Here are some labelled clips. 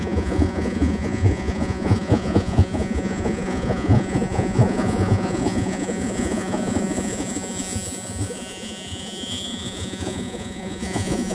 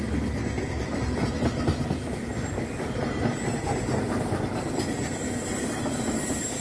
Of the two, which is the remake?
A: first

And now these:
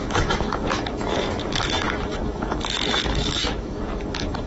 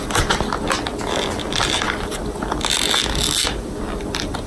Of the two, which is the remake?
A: first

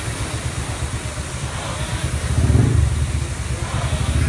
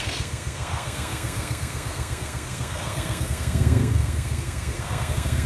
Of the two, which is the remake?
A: second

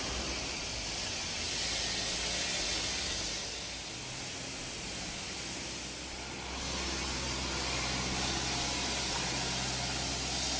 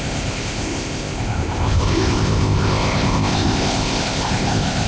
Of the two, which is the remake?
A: second